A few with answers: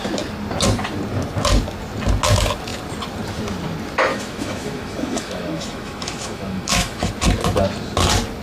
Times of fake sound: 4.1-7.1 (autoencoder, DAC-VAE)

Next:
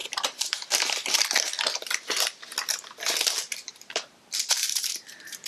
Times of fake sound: 0.0-5.5 (vocoder, BigVGAN v2)

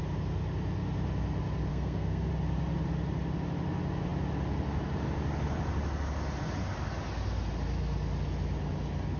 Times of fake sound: 1.7-2.3 (codec, SNAC)

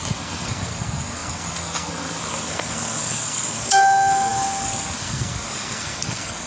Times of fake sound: 0.0-6.5 (codec, SNAC)

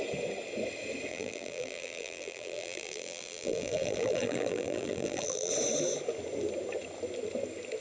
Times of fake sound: 1.1-5.5 (vocoder, BigVGAN v2)

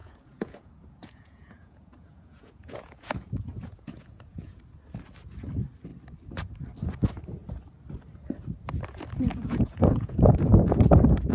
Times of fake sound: 0.0-4.6 (vocoder, Vocos); 9.3-10.8